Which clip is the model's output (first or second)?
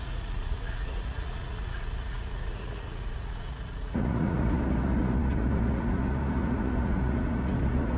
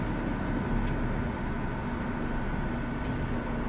first